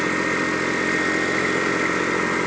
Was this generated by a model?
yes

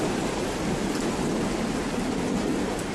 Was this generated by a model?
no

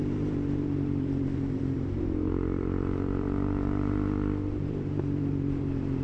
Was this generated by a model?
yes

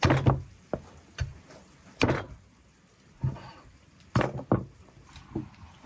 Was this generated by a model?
no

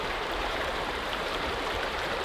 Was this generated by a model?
yes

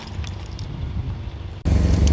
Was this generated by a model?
no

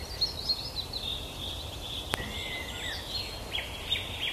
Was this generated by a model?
no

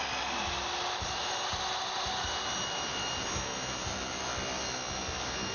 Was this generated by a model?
no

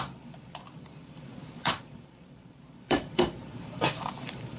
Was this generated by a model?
yes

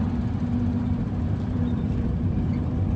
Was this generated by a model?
yes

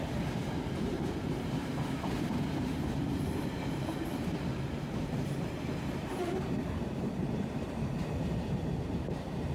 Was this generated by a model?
yes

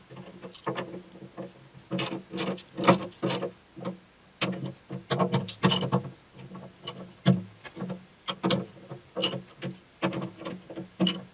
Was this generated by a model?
no